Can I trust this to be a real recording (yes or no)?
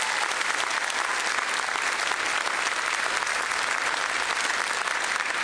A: yes